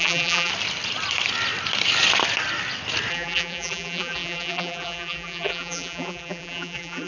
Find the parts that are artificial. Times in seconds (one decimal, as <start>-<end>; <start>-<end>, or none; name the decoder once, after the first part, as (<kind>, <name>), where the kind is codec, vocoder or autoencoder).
0.0-0.5 (vocoder, BigVGAN v2); 3.1-7.1